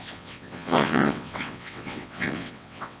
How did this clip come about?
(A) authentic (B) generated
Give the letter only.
B